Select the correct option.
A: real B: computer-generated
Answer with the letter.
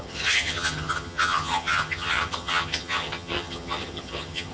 B